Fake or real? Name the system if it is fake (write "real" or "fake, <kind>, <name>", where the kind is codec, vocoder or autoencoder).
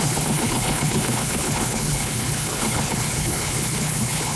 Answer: fake, codec, HILCodec